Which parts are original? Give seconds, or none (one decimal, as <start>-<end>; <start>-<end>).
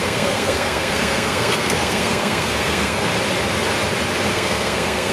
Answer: 3.1-4.3